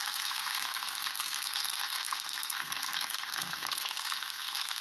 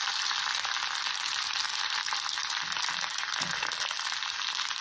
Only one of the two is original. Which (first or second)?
second